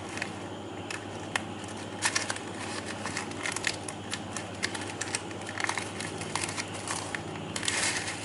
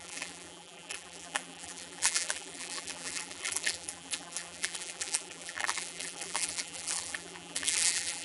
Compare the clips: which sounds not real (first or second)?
second